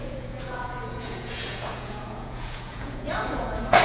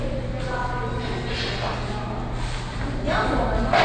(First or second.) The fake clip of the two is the first